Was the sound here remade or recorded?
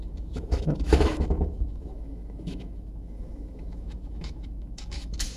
remade